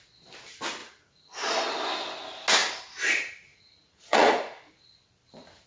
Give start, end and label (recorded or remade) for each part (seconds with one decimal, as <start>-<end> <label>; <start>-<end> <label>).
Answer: 0.0-0.8 recorded; 0.8-1.7 remade; 1.7-3.5 recorded; 3.5-4.7 remade; 4.7-5.7 recorded